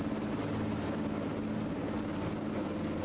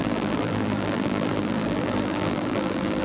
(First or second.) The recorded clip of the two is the first